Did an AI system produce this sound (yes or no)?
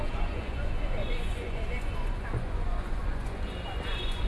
yes